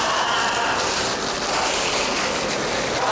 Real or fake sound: real